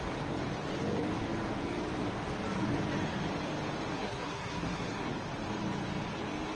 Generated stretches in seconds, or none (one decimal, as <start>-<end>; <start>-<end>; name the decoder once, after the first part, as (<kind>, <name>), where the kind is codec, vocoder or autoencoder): 3.9-5.1 (codec, SNAC)